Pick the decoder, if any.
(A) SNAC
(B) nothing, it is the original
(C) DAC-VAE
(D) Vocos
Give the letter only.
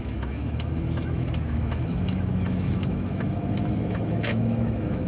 C